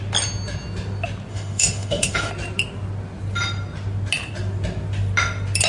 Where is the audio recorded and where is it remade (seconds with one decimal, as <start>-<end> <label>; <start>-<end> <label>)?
0.0-1.3 recorded; 1.3-2.3 remade; 2.3-5.7 recorded